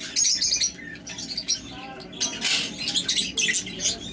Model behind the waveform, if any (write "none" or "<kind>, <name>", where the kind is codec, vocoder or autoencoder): none